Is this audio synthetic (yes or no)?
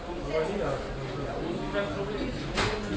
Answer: no